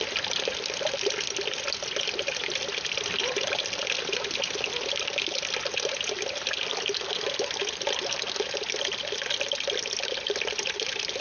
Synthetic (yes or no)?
no